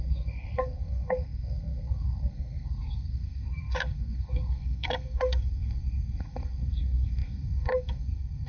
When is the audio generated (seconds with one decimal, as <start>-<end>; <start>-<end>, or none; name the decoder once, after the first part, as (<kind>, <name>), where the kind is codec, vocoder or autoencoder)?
0.0-8.5 (codec, SNAC)

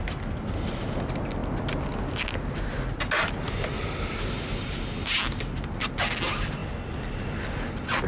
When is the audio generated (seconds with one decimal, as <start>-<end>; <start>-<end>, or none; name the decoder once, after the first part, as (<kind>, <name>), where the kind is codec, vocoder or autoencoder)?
none

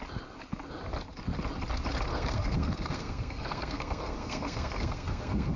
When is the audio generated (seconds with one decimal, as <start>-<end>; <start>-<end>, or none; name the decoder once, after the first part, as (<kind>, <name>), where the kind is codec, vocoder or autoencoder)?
2.1-5.6 (codec, SNAC)